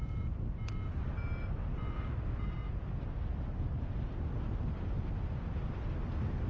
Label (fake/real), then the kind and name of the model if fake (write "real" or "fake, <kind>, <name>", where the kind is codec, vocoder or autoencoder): real